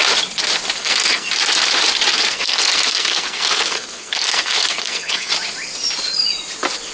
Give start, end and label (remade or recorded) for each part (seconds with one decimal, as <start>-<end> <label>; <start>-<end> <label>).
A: 0.0-0.8 recorded; 0.8-1.3 remade; 1.3-2.1 recorded; 2.1-5.3 remade; 5.3-6.9 recorded

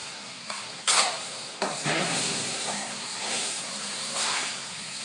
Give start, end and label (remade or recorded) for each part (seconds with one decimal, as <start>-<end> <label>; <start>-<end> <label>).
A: 0.0-5.0 remade